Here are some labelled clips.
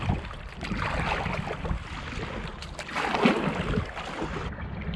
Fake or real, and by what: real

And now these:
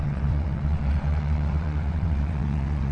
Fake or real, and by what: fake, vocoder, WaveNeXt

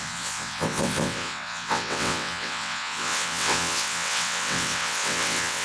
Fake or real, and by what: fake, vocoder, WaveNeXt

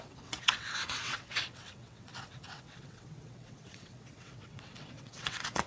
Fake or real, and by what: fake, vocoder, WaveNeXt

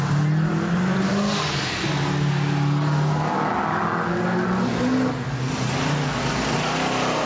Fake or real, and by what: real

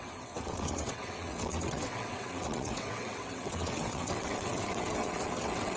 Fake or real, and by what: fake, vocoder, WaveNeXt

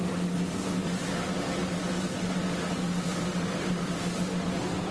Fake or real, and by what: real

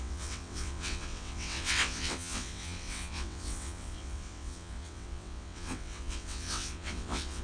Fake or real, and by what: fake, vocoder, WaveNeXt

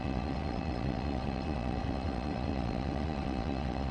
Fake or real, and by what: fake, vocoder, WaveNeXt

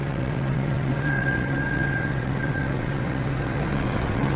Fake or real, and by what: fake, vocoder, WaveNeXt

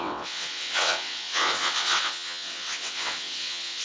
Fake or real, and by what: fake, vocoder, WaveNeXt